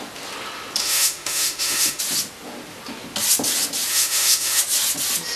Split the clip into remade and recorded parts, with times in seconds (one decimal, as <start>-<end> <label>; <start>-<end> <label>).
0.0-0.8 recorded; 0.8-2.0 remade; 2.0-3.9 recorded; 3.9-4.6 remade; 4.6-5.4 recorded